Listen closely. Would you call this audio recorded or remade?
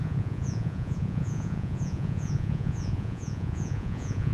remade